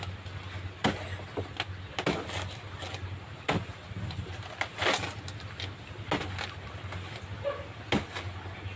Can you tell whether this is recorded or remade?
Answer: recorded